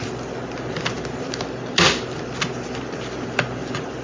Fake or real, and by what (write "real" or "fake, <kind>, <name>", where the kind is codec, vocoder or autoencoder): real